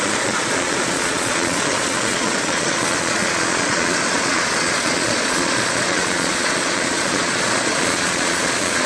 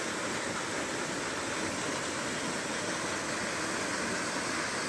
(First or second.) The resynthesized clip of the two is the first